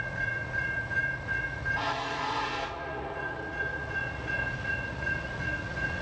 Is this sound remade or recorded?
remade